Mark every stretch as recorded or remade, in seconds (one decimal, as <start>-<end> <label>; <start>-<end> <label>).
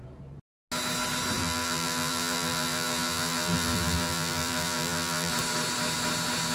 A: 0.0-1.4 recorded; 1.4-5.3 remade; 5.3-6.5 recorded